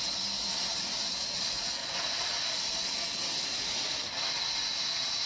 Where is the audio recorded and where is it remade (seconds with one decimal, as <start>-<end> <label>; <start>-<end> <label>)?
0.0-1.8 recorded; 1.8-2.6 remade; 2.6-5.3 recorded